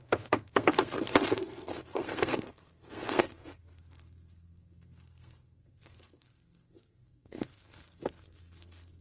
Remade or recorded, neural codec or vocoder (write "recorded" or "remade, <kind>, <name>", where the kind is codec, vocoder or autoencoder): remade, codec, SNAC